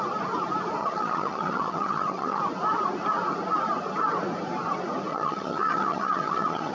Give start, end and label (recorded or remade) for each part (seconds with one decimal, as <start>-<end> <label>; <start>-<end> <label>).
0.0-0.8 recorded; 0.8-2.4 remade; 2.4-5.1 recorded; 5.1-6.7 remade